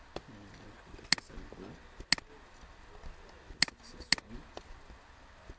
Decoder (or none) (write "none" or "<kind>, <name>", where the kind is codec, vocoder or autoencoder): none